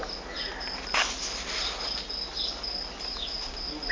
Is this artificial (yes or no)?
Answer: no